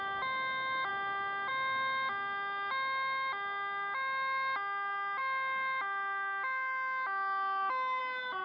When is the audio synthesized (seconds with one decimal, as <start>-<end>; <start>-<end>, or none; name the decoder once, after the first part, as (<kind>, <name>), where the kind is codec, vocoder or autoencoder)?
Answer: none